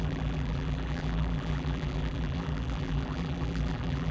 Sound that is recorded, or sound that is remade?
remade